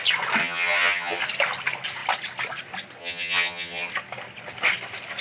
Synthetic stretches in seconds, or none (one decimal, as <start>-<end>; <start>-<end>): 0.4-1.2; 3.0-3.9